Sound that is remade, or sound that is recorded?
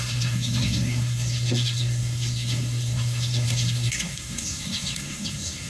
remade